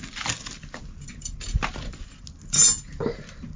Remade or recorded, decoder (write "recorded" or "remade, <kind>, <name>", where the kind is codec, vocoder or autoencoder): recorded